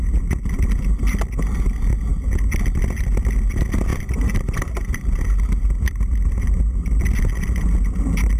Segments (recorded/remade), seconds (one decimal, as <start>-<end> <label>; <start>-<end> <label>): 0.0-3.9 recorded; 3.9-6.9 remade; 6.9-8.4 recorded